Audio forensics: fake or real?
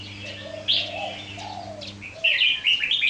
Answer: real